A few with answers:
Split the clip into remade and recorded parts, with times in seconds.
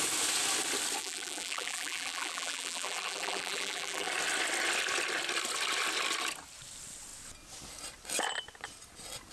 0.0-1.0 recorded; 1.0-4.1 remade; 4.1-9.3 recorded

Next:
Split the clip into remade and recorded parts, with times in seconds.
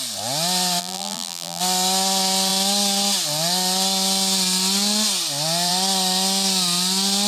0.0-0.8 recorded; 0.8-1.6 remade; 1.6-7.3 recorded